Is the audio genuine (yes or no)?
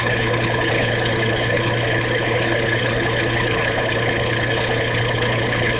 no